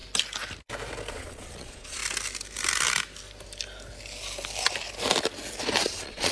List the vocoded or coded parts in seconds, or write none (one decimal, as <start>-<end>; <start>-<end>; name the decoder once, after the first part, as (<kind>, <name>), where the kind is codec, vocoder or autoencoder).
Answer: 1.1-2.0 (vocoder, Vocos); 5.8-6.3